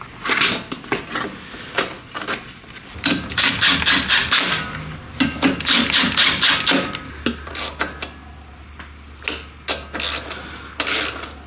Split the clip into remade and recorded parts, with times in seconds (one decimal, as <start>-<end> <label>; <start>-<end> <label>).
0.0-11.5 recorded